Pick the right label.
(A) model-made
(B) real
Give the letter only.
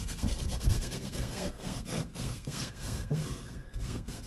A